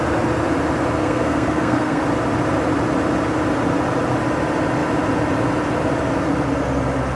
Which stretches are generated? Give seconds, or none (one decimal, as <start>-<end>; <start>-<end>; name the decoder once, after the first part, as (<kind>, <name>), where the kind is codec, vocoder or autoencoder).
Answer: 1.0-2.0 (codec, SNAC)